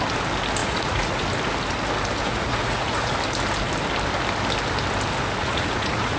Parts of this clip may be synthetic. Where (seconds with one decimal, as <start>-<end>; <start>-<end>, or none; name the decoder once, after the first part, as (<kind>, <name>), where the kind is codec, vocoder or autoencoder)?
0.6-1.2 (vocoder, Vocos); 2.2-3.1; 5.4-6.2